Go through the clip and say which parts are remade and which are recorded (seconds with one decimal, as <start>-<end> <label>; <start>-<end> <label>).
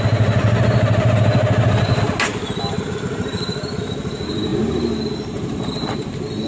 0.0-6.5 recorded